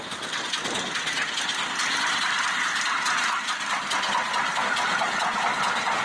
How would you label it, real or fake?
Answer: real